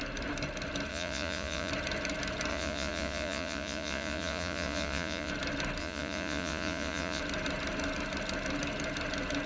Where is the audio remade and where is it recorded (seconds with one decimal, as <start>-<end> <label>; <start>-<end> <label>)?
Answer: 0.0-0.9 recorded; 0.9-1.7 remade; 1.7-2.5 recorded; 2.5-5.3 remade; 5.3-5.8 recorded; 5.8-7.2 remade; 7.2-9.5 recorded